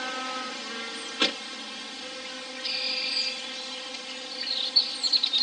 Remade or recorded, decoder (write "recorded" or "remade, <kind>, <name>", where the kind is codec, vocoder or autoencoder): recorded